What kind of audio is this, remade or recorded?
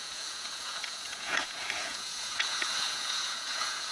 remade